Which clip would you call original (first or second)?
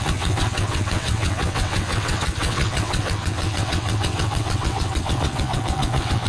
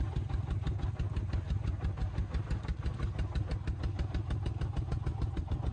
second